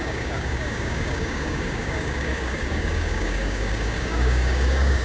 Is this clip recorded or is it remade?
remade